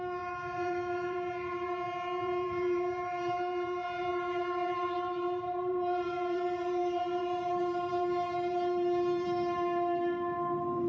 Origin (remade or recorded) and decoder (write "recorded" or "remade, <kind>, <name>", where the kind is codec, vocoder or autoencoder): remade, vocoder, BigVGAN v2